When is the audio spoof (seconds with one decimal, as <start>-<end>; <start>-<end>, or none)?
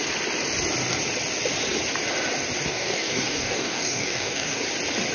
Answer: 2.7-4.6